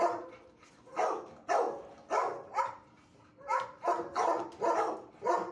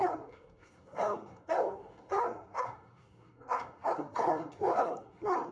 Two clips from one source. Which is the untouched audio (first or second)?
first